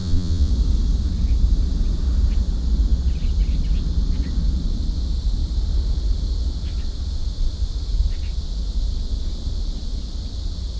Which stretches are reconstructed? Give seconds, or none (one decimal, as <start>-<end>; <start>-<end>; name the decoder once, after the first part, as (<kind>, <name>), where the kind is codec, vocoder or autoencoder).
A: 0.0-0.5 (vocoder, Vocos)